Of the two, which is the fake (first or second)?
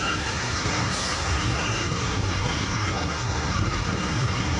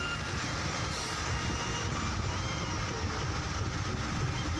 first